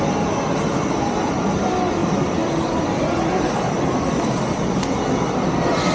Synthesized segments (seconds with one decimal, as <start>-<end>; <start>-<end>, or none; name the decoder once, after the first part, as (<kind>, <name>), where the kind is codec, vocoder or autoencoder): 2.0-4.4 (vocoder, BigVGAN v2)